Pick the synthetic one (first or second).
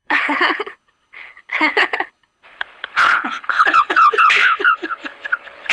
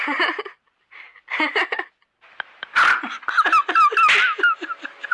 first